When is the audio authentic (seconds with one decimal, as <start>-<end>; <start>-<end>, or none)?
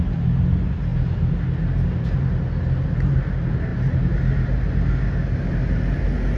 0.0-3.7; 4.2-6.4